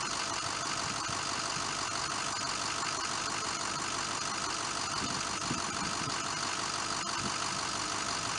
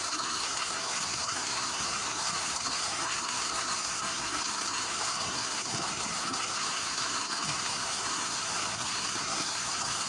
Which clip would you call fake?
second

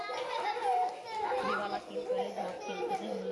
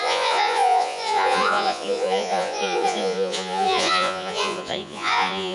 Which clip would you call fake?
second